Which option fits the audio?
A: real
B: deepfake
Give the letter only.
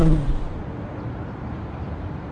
B